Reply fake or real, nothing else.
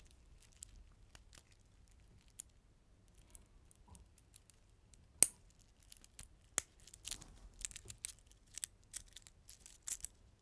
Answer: real